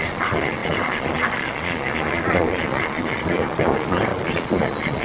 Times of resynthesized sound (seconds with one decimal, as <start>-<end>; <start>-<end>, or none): 0.0-5.0